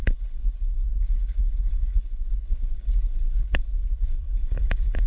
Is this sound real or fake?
fake